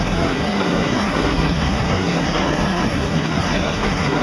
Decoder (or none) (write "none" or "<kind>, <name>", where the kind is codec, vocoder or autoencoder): codec, SNAC